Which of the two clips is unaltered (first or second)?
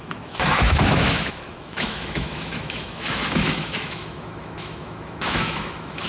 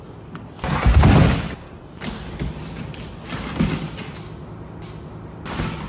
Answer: second